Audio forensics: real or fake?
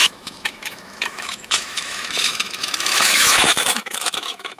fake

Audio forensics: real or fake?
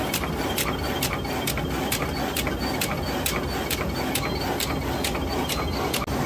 real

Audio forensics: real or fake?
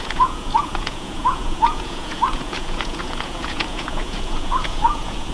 fake